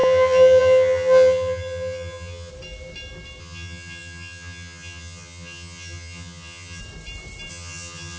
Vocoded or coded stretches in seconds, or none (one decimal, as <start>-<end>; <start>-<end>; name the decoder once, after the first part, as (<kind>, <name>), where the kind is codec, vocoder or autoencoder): 0.0-2.5 (vocoder, HiFi-GAN); 3.4-6.8; 7.5-8.2